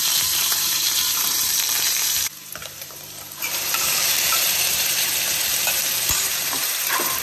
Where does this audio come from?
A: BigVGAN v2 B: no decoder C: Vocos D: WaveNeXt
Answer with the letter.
A